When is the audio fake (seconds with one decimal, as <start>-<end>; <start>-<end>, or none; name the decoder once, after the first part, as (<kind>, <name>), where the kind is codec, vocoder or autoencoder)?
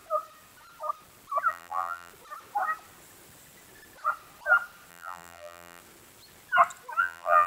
1.5-2.1 (vocoder, BigVGAN v2); 4.9-5.8; 7.0-7.5